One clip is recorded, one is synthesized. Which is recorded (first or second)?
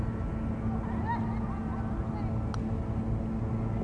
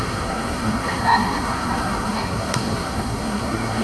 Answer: first